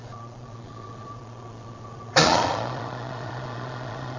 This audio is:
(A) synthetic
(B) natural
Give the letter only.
A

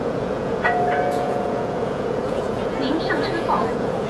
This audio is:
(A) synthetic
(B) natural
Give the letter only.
A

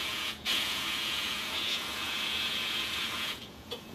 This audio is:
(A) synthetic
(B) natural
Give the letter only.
A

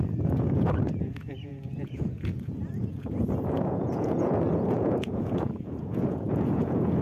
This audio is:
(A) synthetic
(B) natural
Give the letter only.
A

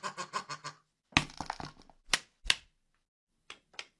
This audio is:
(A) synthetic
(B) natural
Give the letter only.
B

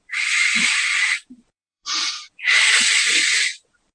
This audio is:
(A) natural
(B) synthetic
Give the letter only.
B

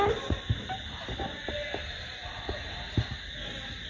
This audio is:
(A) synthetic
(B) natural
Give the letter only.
B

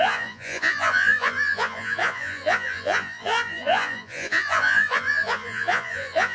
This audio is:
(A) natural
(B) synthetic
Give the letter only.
B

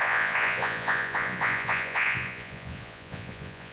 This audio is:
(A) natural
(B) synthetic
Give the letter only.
B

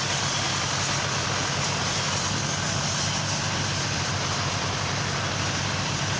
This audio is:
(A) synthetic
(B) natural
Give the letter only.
B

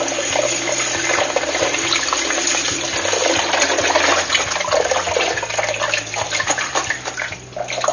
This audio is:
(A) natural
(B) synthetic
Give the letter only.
A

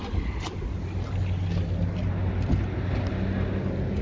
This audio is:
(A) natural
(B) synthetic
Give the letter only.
A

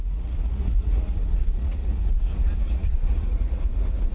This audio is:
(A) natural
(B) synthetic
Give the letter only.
B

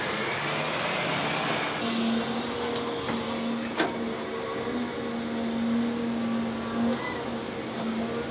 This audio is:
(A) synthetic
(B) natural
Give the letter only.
B